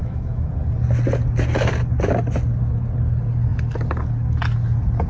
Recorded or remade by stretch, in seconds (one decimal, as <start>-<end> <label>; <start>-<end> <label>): 0.0-0.5 remade; 0.5-5.1 recorded